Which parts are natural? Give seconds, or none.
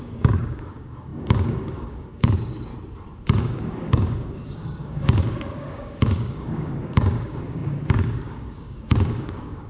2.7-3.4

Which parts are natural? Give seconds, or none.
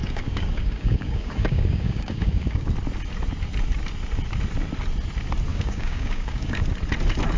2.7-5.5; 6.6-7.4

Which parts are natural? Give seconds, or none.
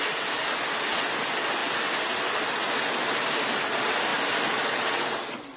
0.0-5.6